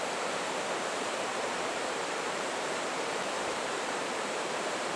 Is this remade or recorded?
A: remade